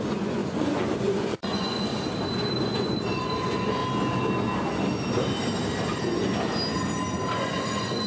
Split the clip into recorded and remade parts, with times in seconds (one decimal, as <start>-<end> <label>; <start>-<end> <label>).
0.0-1.9 remade; 1.9-2.6 recorded; 2.6-3.8 remade; 3.8-7.3 recorded; 7.3-8.1 remade